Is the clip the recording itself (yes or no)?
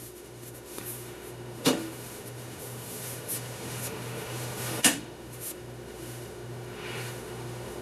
no